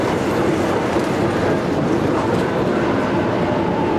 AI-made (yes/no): yes